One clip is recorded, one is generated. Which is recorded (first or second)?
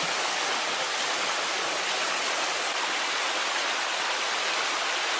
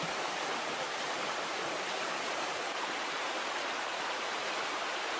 first